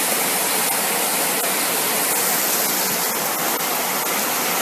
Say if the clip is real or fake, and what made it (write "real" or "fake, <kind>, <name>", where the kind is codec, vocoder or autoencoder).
real